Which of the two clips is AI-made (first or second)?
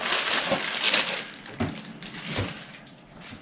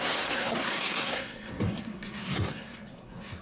second